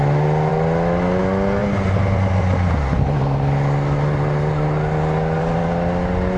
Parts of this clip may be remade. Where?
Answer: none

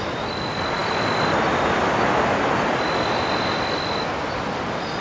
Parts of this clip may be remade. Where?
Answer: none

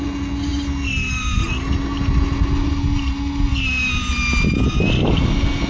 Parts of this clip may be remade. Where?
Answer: none